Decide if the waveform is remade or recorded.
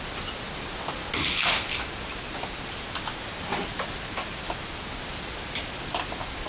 recorded